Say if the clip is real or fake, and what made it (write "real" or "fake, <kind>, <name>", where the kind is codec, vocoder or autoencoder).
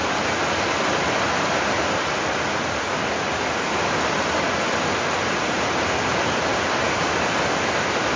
real